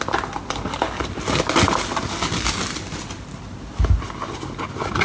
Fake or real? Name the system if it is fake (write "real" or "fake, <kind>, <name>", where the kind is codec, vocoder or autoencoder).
real